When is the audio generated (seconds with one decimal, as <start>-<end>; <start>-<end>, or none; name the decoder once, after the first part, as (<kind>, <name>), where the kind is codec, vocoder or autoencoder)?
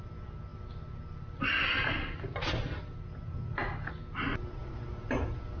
none